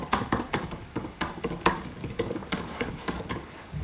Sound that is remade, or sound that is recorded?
remade